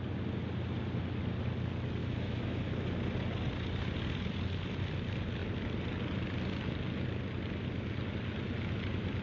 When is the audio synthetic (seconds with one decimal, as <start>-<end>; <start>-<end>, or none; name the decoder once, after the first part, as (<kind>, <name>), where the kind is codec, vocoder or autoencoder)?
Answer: 2.0-2.6 (autoencoder, DAC-VAE)